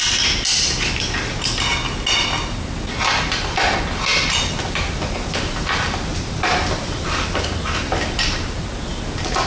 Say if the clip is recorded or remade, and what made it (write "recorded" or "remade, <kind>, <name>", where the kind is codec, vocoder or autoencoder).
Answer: recorded